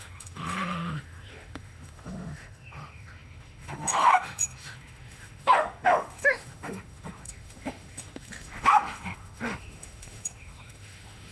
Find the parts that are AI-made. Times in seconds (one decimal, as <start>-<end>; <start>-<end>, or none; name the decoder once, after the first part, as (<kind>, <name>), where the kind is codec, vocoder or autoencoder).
0.0-11.3 (autoencoder, DAC-VAE)